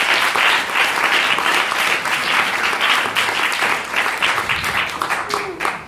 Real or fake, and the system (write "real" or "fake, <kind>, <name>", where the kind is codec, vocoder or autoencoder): real